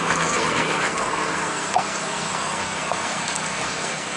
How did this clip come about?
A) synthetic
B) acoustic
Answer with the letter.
A